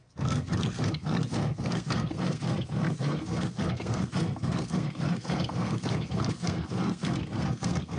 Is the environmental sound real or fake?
fake